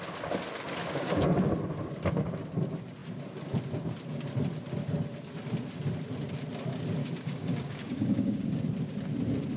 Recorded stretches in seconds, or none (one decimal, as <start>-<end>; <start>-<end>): 0.0-0.8; 1.5-7.0; 8.6-9.6